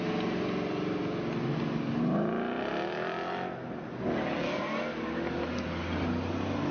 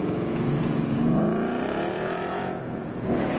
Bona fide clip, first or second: first